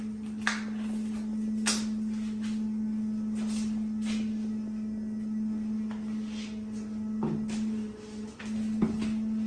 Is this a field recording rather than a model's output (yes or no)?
yes